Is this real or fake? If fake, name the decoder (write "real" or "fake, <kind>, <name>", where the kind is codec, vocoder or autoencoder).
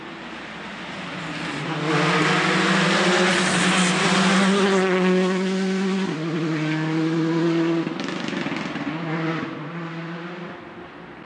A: real